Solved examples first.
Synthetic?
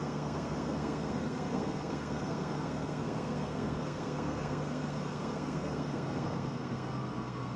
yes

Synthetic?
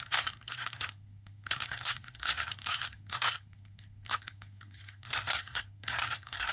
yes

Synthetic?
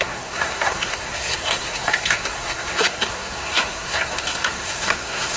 yes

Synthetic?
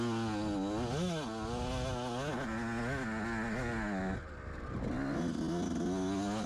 no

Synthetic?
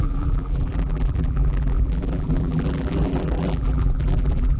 yes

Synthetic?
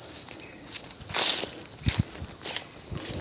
no